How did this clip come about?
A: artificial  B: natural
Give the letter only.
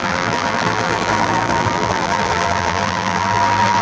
A